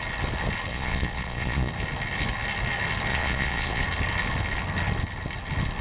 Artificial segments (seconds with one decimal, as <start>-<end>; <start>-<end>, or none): 0.7-1.7; 3.1-3.8